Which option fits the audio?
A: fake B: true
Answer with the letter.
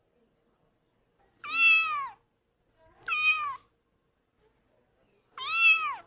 B